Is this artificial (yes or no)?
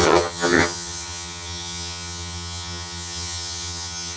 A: yes